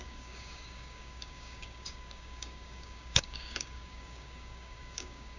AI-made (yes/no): yes